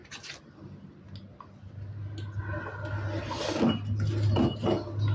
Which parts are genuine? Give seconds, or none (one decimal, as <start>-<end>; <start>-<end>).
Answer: 0.0-5.1